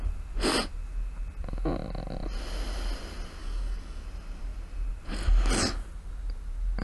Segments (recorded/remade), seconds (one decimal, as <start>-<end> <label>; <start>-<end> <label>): 0.0-3.4 recorded; 3.4-4.0 remade; 4.0-6.8 recorded